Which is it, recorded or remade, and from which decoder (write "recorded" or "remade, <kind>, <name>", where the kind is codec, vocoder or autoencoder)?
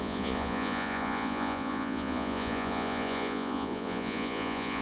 remade, vocoder, Vocos